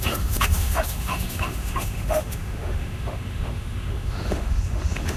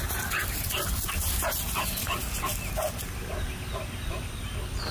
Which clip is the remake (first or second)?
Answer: first